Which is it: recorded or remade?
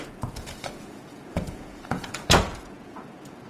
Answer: remade